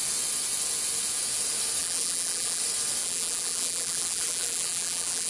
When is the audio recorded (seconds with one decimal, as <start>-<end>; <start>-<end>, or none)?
0.0-1.8; 2.6-3.0